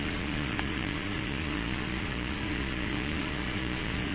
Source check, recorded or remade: remade